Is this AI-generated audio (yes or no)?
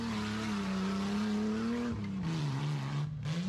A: no